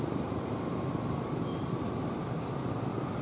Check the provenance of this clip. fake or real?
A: fake